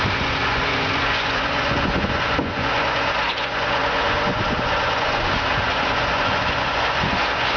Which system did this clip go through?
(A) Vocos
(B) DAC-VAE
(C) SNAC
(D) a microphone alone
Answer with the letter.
A